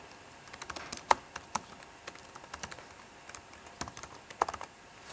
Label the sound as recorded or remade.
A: recorded